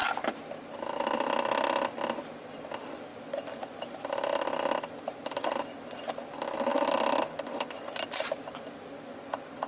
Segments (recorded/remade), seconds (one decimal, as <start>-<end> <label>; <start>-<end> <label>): 0.0-9.7 recorded